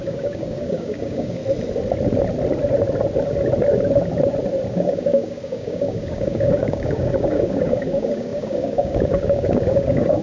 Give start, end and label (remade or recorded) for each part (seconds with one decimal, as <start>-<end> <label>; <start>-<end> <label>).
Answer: 0.0-1.4 remade; 1.4-4.7 recorded; 4.7-10.2 remade